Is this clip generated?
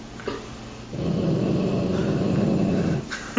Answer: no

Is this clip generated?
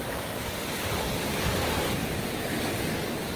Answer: yes